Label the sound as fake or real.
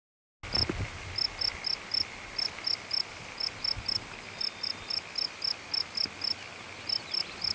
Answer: real